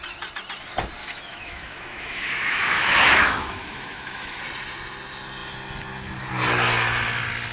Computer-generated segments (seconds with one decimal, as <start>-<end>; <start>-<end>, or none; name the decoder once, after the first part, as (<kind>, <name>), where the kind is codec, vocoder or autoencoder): 1.0-4.4 (autoencoder, DAC-VAE)